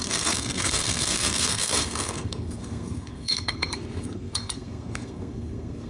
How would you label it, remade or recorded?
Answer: remade